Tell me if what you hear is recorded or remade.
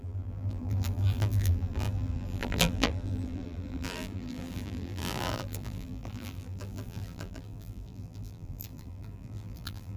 remade